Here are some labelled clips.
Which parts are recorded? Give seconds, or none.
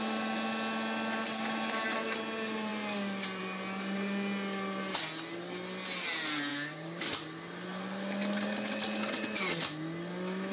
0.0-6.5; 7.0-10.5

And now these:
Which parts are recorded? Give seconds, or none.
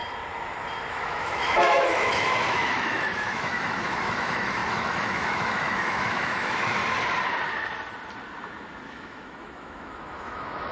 0.0-0.9; 6.8-8.9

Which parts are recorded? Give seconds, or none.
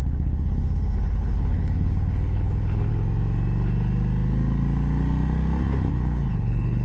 2.9-5.9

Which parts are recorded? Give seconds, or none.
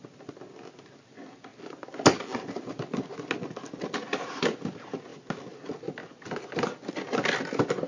0.0-7.9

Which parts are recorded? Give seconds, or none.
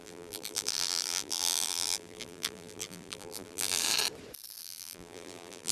3.8-4.6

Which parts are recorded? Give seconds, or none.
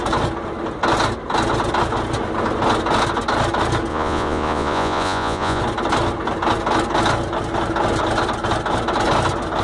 0.0-3.9; 5.6-9.6